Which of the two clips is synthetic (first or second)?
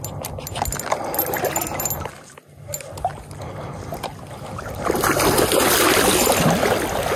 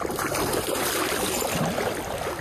second